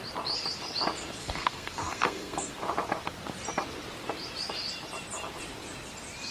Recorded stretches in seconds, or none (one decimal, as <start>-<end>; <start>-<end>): 0.0-1.2; 2.5-6.3